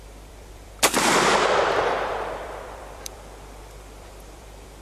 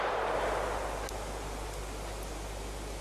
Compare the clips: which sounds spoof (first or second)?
first